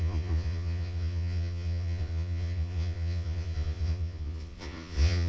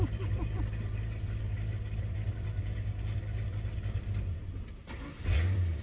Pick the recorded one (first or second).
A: second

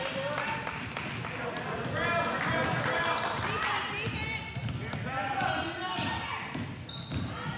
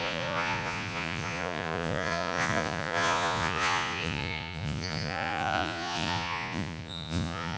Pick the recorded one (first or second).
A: first